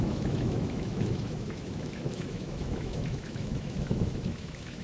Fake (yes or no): yes